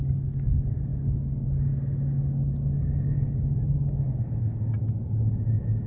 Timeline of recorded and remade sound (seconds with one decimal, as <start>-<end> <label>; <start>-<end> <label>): 0.0-5.9 recorded